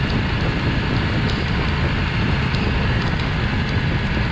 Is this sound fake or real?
real